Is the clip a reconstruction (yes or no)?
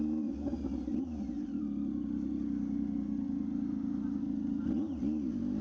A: no